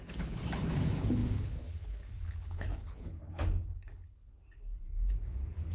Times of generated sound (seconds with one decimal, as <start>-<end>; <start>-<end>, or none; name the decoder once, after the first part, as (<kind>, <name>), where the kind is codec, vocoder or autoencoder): 0.0-5.7 (codec, HILCodec)